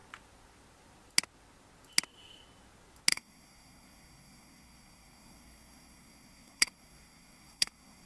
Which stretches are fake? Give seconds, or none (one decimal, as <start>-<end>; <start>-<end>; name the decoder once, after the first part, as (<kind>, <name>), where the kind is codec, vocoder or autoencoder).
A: 3.1-8.1 (codec, SNAC)